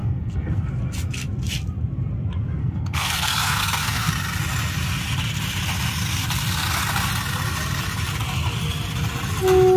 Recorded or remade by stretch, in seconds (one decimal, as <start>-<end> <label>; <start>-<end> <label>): 0.0-0.7 remade; 0.7-2.6 recorded; 2.6-4.1 remade; 4.1-9.8 recorded